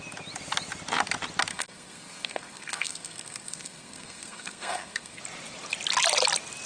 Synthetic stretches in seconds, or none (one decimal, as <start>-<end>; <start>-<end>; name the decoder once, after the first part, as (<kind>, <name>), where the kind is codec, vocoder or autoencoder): 1.5-5.2 (codec, SNAC)